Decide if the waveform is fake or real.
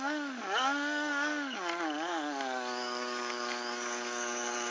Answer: fake